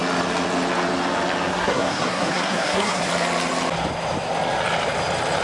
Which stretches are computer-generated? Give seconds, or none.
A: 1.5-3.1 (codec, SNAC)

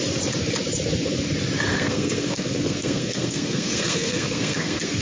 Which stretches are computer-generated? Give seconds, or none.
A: 1.7-5.0 (codec, SNAC)

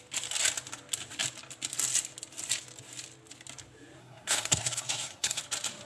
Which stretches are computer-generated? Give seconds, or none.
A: 4.0-5.4 (codec, SNAC)